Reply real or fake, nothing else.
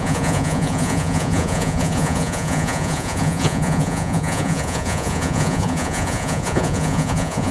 fake